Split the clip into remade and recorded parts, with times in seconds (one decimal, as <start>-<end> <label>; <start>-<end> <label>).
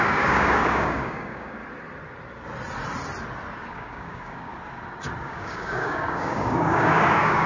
0.0-1.6 remade; 1.6-3.7 recorded; 3.7-4.5 remade; 4.5-5.2 recorded; 5.2-7.5 remade